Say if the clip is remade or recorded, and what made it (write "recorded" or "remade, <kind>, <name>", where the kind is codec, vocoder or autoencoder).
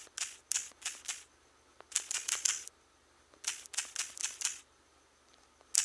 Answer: recorded